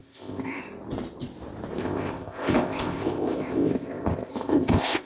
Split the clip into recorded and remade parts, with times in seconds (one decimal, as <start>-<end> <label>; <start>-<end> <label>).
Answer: 0.0-0.6 remade; 0.6-1.8 recorded; 1.8-5.1 remade

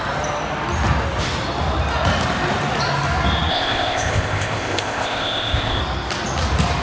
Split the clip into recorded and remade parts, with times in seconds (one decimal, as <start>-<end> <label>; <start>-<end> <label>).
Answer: 0.0-3.5 recorded; 3.5-5.8 remade; 5.8-6.8 recorded

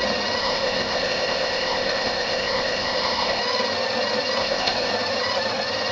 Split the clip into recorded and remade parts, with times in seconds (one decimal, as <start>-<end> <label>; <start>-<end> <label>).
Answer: 0.0-0.4 recorded; 0.4-3.4 remade; 3.4-4.4 recorded; 4.4-4.9 remade; 4.9-5.9 recorded

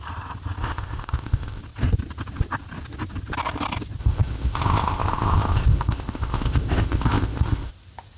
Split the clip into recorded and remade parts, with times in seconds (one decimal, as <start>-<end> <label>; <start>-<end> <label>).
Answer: 0.0-0.6 recorded; 0.6-1.6 remade; 1.6-4.0 recorded; 4.0-7.7 remade; 7.7-8.2 recorded